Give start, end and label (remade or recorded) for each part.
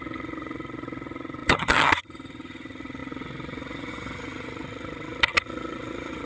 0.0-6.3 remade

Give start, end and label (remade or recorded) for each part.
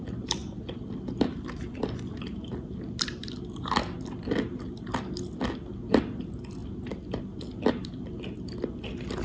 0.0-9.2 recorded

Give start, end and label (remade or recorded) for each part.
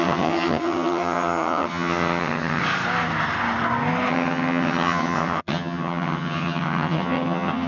0.0-2.6 remade; 2.6-4.1 recorded; 4.1-7.7 remade